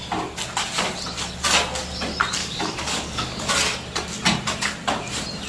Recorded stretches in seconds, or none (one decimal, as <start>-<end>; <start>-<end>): 0.0-2.4; 3.5-5.5